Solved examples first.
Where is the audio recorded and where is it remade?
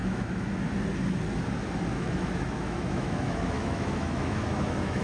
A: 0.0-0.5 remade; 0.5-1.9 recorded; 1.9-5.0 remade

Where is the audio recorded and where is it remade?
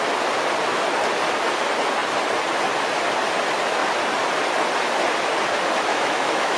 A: 0.0-5.9 recorded; 5.9-6.6 remade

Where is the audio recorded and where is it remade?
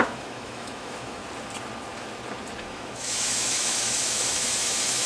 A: 0.0-1.2 remade; 1.2-2.6 recorded; 2.6-5.1 remade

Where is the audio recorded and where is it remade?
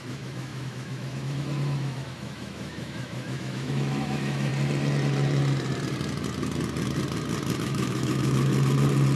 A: 0.0-4.5 remade; 4.5-7.6 recorded; 7.6-8.5 remade; 8.5-9.2 recorded